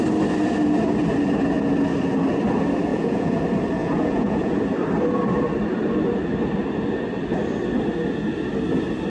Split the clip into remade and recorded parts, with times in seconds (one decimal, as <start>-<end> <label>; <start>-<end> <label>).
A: 0.0-2.9 recorded; 2.9-3.4 remade; 3.4-3.8 recorded; 3.8-4.6 remade; 4.6-9.1 recorded